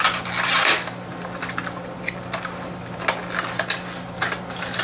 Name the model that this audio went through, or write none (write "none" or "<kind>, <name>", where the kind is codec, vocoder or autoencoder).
none